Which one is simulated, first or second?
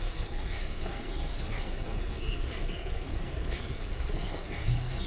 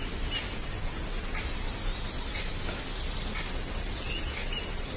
first